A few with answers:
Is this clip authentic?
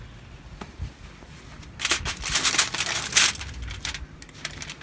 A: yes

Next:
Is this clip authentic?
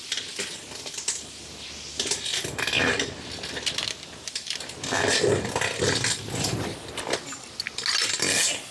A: yes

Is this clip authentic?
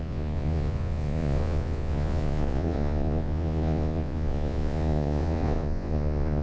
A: no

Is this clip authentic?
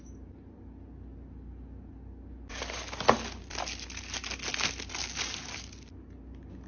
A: yes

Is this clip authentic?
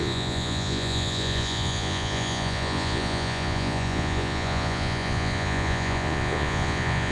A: no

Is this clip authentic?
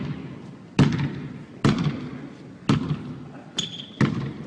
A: yes